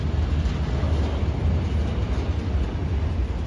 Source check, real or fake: real